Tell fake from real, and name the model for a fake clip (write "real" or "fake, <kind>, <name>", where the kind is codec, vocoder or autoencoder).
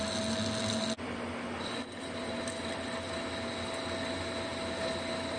real